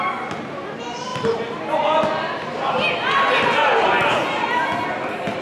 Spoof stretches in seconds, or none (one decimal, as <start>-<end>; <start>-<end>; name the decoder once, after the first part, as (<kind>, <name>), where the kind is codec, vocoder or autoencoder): none